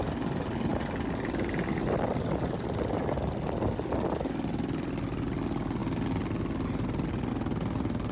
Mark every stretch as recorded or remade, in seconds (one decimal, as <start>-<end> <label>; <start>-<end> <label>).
0.0-8.1 recorded

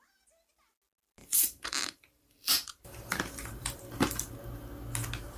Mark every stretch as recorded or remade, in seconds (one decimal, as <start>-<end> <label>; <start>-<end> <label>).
0.0-1.2 recorded; 1.2-4.3 remade; 4.3-5.4 recorded

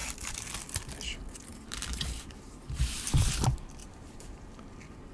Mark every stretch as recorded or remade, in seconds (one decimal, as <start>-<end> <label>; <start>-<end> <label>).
0.0-1.5 recorded; 1.5-3.1 remade; 3.1-3.8 recorded; 3.8-4.4 remade; 4.4-5.1 recorded

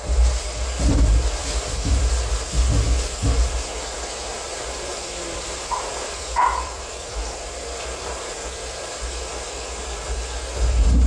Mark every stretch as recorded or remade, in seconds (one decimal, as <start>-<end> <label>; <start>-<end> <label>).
0.0-1.4 recorded; 1.4-2.1 remade; 2.1-4.3 recorded; 4.3-9.0 remade; 9.0-11.1 recorded

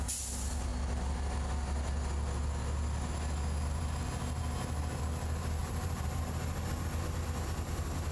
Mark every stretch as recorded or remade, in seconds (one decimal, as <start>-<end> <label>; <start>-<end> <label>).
0.0-5.6 recorded; 5.6-6.2 remade; 6.2-8.1 recorded

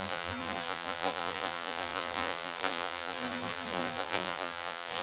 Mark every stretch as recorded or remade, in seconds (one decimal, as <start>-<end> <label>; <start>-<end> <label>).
0.0-5.0 remade

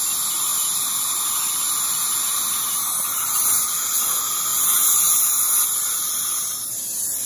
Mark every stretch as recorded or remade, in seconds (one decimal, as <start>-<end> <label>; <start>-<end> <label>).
0.0-0.5 recorded; 0.5-4.0 remade; 4.0-4.5 recorded; 4.5-5.2 remade; 5.2-7.3 recorded

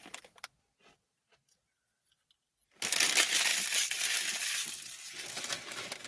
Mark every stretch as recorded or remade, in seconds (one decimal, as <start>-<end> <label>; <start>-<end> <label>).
0.0-6.1 recorded